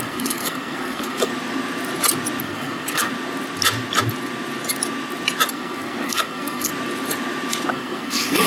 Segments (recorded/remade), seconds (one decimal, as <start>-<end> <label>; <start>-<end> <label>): 0.0-1.3 remade; 1.3-2.4 recorded; 2.4-3.1 remade; 3.1-5.5 recorded; 5.5-6.7 remade; 6.7-7.7 recorded; 7.7-8.5 remade